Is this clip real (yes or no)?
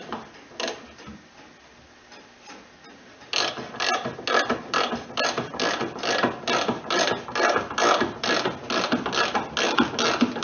yes